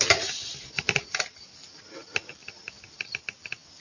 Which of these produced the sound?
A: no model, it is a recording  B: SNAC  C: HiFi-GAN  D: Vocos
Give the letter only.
A